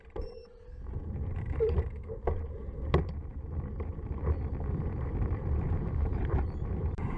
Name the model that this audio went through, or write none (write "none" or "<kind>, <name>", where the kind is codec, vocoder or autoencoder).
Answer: vocoder, BigVGAN v2